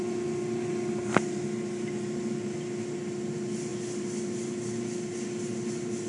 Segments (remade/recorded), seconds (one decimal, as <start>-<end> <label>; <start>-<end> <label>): 0.0-6.1 recorded